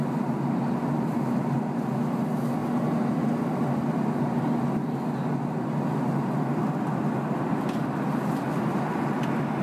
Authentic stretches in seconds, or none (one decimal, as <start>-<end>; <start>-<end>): 0.0-9.6